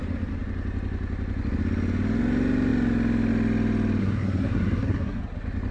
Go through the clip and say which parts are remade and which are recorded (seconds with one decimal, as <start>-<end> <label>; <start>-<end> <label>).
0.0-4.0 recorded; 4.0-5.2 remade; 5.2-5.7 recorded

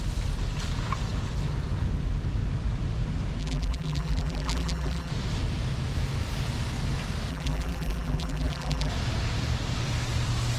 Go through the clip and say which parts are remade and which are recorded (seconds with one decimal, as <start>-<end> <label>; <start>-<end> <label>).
0.0-3.4 recorded; 3.4-5.1 remade; 5.1-7.3 recorded; 7.3-8.9 remade; 8.9-10.6 recorded

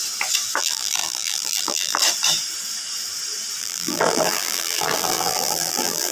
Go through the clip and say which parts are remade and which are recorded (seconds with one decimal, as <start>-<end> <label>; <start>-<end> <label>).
0.0-0.6 recorded; 0.6-2.0 remade; 2.0-3.6 recorded; 3.6-6.1 remade

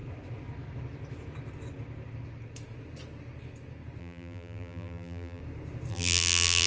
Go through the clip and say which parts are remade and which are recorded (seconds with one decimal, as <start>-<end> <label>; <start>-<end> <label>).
0.0-4.0 recorded; 4.0-5.4 remade; 5.4-5.9 recorded; 5.9-6.7 remade

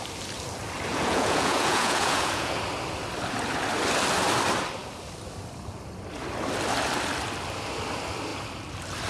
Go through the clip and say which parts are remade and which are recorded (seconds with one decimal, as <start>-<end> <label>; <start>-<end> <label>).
0.0-0.9 recorded; 0.9-2.6 remade; 2.6-9.1 recorded